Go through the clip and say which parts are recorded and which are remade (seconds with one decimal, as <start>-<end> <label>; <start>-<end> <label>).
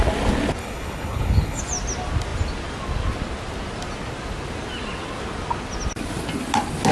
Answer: 0.0-0.6 recorded; 0.6-1.6 remade; 1.6-6.9 recorded